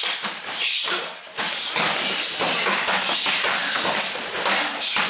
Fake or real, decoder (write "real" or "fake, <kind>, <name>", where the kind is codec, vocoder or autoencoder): real